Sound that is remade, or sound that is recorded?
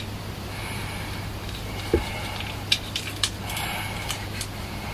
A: remade